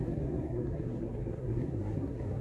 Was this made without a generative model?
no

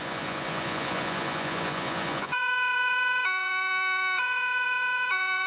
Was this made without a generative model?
no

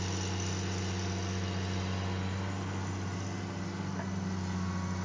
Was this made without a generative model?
yes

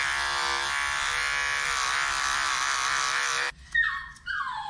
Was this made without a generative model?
yes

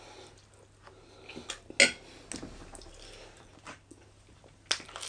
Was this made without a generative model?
yes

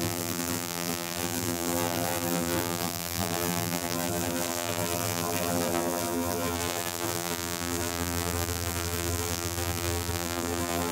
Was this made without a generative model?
no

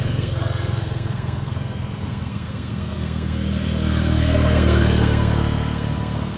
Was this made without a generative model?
no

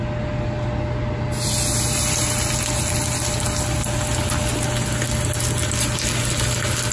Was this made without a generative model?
yes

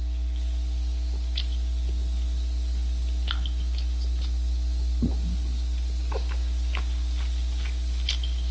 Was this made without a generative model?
yes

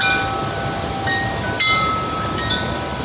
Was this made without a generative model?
yes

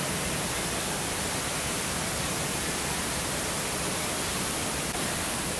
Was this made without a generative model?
yes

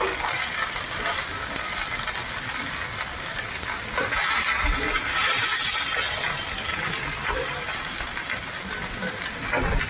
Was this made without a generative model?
yes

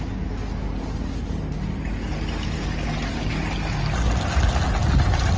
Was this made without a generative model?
yes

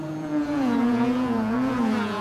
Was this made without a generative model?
no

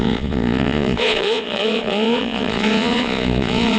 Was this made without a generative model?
no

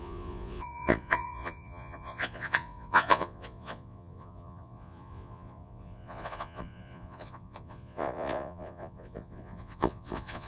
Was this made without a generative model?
no